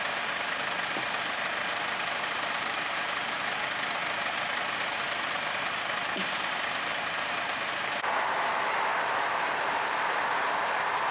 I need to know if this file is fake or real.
real